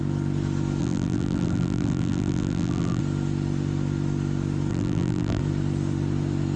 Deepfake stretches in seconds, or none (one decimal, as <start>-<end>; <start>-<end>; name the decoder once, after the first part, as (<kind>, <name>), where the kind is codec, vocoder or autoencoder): 0.8-3.0 (vocoder, BigVGAN v2); 4.7-5.4